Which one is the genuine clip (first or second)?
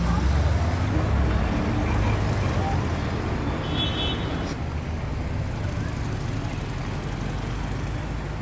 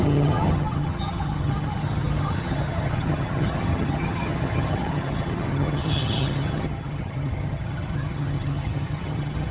first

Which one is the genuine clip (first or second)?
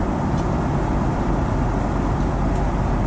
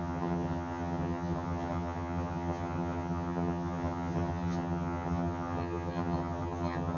first